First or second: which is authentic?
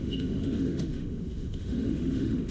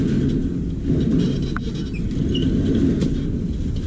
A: second